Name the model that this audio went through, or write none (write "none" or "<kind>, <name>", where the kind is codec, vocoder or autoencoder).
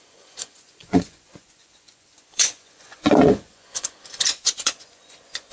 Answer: vocoder, Vocos